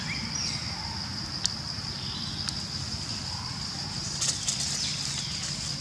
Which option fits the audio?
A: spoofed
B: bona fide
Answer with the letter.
B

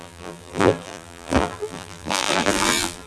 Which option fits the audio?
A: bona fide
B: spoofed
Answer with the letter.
B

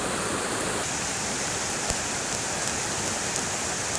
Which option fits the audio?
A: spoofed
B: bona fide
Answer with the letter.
A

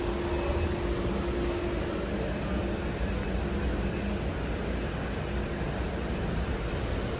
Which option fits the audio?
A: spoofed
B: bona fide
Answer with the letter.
B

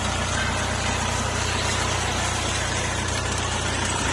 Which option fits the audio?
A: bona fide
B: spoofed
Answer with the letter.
B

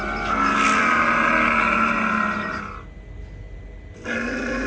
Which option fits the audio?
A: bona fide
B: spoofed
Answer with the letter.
A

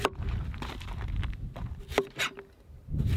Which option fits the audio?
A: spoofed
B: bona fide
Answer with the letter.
A